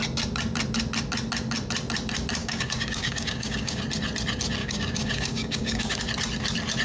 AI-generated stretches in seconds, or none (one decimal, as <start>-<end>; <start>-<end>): 2.4-3.8; 4.6-6.0